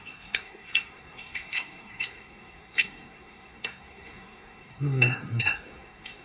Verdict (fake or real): fake